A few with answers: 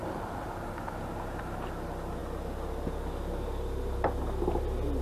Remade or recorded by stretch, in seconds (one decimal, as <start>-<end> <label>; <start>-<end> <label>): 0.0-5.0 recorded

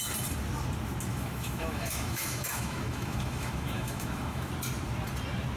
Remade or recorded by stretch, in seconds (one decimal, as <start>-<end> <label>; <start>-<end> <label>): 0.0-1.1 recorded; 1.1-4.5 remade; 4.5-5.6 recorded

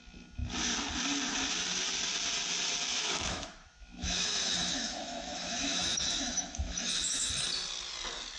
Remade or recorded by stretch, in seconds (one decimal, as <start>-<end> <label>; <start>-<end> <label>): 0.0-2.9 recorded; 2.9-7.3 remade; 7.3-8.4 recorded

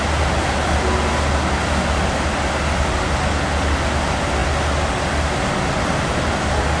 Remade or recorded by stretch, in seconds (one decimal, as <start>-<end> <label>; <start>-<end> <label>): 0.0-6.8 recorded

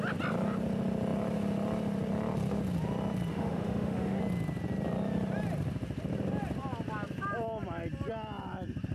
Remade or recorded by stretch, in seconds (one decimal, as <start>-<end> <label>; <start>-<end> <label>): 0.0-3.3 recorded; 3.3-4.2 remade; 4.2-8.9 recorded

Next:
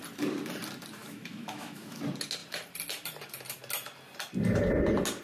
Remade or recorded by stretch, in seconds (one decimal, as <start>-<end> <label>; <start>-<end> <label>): 0.0-1.0 recorded; 1.0-2.0 remade; 2.0-5.2 recorded

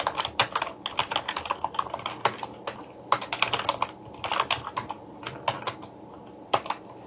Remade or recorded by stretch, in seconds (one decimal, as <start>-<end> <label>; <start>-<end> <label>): 0.0-7.1 recorded

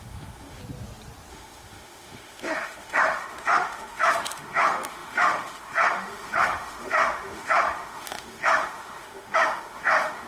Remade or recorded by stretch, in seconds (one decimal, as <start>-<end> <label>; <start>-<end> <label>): 0.0-0.6 remade; 0.6-1.3 recorded; 1.3-10.3 remade